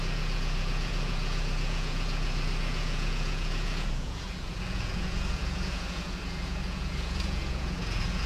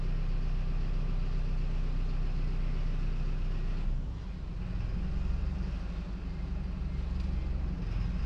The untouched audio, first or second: second